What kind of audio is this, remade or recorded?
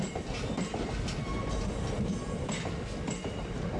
recorded